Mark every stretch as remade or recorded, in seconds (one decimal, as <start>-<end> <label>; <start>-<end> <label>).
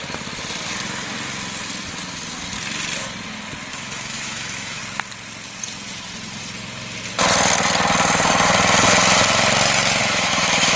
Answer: 0.0-3.7 recorded; 3.7-4.8 remade; 4.8-10.0 recorded; 10.0-10.8 remade